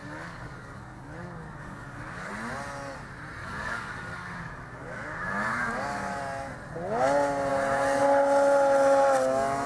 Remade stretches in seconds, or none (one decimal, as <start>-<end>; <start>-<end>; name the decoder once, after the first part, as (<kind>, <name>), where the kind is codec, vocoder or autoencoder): 0.0-2.3 (codec, DAC); 3.4-6.2